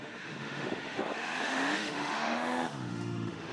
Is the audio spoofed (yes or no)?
yes